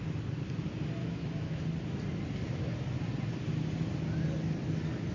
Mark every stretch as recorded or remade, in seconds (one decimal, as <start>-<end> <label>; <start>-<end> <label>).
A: 0.0-1.0 recorded; 1.0-1.6 remade; 1.6-5.1 recorded